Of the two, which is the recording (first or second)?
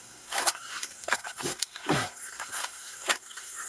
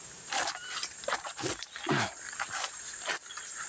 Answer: second